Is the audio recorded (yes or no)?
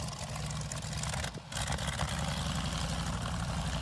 yes